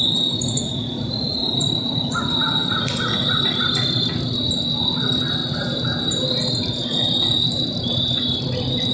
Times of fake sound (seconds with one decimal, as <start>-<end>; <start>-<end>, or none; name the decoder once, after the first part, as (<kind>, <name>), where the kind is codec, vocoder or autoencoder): none